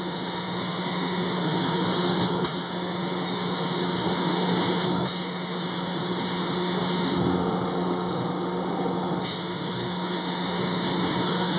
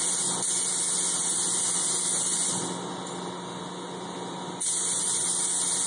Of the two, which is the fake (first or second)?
first